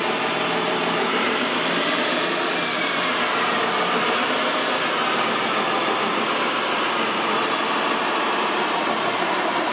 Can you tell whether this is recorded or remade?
remade